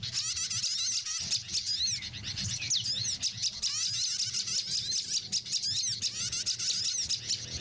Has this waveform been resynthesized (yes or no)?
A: no